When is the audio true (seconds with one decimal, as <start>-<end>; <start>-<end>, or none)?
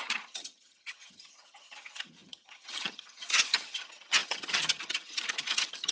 none